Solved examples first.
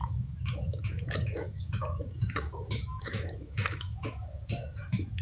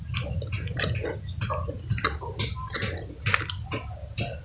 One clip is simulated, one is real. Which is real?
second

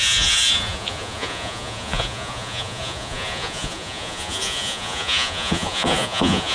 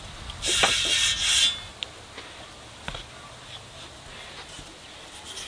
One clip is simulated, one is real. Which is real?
second